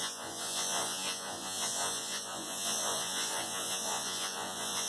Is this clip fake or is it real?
fake